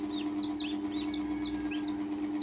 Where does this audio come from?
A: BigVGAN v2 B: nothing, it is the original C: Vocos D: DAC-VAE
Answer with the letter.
B